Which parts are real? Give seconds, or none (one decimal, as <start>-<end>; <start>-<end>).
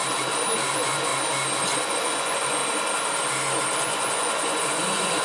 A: 0.0-0.7; 1.1-1.6; 2.6-3.8